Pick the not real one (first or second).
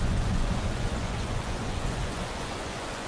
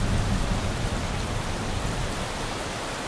first